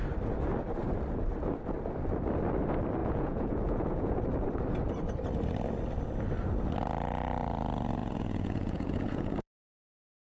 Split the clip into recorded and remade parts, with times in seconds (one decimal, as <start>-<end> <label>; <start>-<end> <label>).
0.0-3.0 recorded; 3.0-4.2 remade; 4.2-8.0 recorded; 8.0-10.3 remade